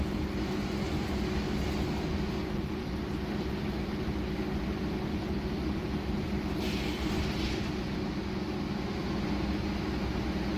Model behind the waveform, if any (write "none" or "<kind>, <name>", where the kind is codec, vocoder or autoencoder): none